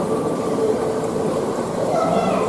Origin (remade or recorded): remade